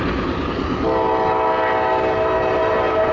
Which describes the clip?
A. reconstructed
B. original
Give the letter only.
B